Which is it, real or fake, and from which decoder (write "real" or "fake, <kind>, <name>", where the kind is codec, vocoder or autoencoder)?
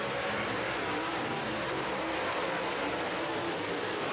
real